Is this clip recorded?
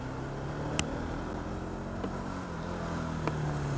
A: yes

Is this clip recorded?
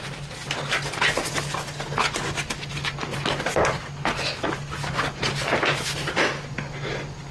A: yes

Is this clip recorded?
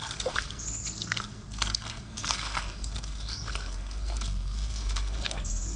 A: no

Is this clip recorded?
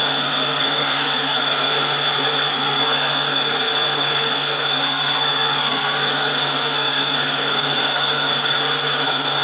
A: no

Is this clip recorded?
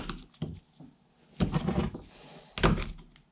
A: yes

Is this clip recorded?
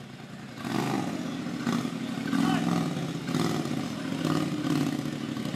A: yes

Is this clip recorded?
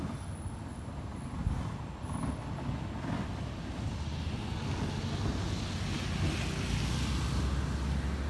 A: yes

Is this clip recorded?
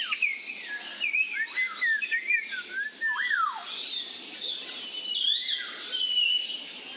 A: yes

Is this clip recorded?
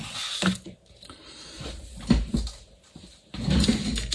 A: yes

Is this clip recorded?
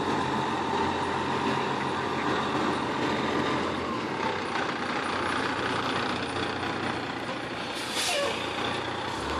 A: yes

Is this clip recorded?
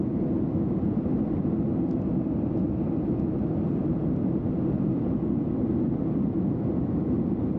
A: yes